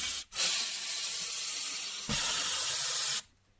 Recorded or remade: recorded